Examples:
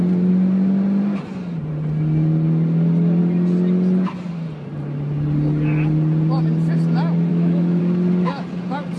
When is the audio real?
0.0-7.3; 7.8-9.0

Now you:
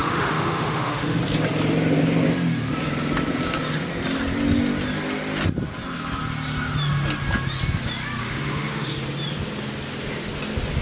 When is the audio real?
1.2-8.2; 8.9-10.8

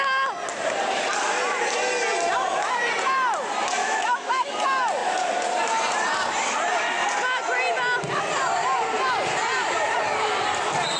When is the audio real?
0.0-3.8; 4.5-11.0

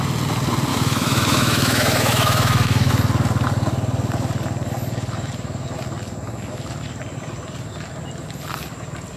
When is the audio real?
0.0-0.7; 2.9-9.2

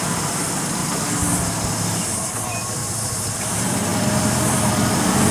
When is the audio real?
0.0-5.3

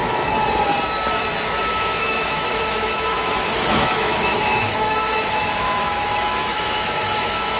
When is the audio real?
0.0-1.6

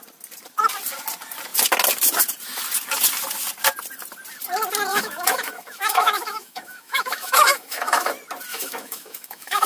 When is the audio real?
0.0-4.9; 8.1-8.5